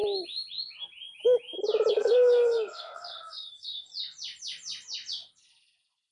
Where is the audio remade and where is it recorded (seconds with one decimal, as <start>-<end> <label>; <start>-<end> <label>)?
0.0-1.9 recorded; 1.9-3.9 remade; 3.9-6.1 recorded